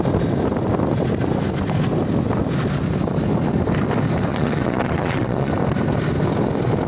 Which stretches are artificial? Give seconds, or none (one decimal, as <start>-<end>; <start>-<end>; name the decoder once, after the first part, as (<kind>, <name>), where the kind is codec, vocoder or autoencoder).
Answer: 4.3-5.5 (vocoder, Vocos)